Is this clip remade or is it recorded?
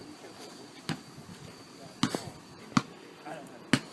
recorded